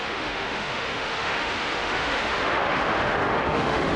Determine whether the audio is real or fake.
fake